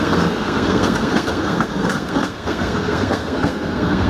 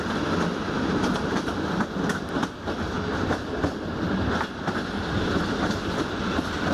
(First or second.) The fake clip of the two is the first